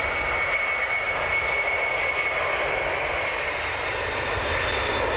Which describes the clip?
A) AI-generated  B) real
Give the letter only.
B